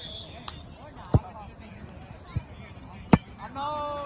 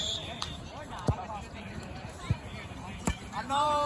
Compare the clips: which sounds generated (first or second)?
second